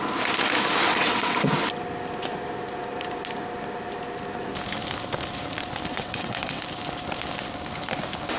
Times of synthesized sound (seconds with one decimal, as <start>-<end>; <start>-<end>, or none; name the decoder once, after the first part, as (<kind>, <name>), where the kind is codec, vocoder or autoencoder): 0.9-1.5 (vocoder, WaveNeXt); 5.9-6.6